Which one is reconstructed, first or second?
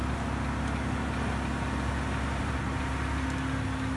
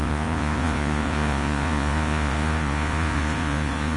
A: second